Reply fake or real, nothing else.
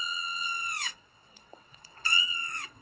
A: fake